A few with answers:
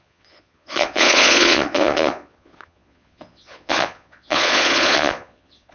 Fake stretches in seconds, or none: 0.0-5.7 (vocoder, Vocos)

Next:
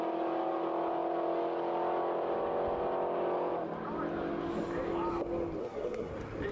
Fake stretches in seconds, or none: 5.6-6.1 (codec, SNAC)

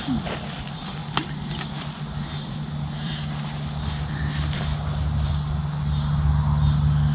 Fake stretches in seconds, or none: 1.0-5.3 (vocoder, BigVGAN v2)

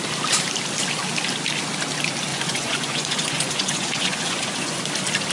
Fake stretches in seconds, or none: 2.3-4.8 (vocoder, Vocos)

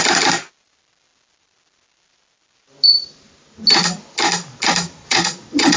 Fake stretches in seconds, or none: 5.0-5.8 (vocoder, Vocos)

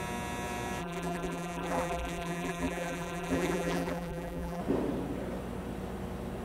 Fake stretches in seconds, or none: 0.8-4.6 (vocoder, BigVGAN v2)

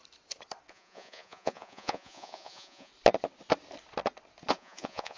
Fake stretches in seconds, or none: 0.7-2.9 (vocoder, Vocos); 4.5-5.2